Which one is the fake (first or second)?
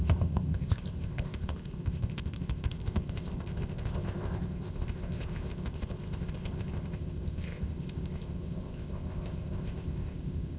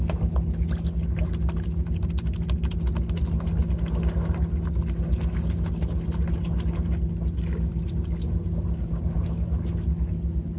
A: first